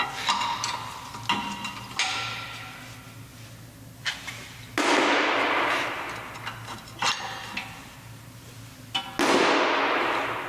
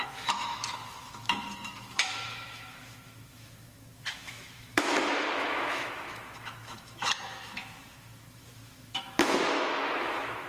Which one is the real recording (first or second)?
first